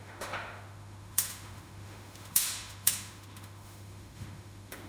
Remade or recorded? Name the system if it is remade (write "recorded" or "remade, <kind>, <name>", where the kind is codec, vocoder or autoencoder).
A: remade, autoencoder, DAC-VAE